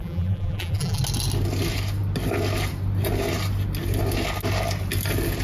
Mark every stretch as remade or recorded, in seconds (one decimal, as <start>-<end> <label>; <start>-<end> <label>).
0.0-1.0 remade; 1.0-5.4 recorded